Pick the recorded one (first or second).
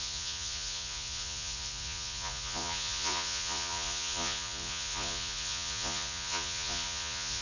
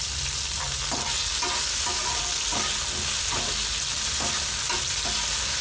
second